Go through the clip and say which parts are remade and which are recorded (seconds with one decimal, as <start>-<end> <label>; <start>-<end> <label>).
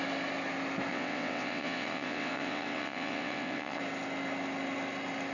0.0-0.9 recorded; 0.9-3.8 remade; 3.8-5.3 recorded